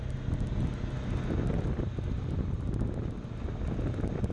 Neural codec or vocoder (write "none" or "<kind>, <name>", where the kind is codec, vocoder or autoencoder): none